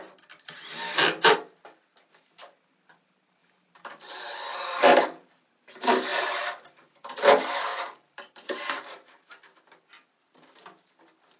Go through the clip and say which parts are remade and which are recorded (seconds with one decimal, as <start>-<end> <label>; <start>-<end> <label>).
0.0-3.4 recorded; 3.4-5.3 remade; 5.3-7.7 recorded; 7.7-9.5 remade; 9.5-11.4 recorded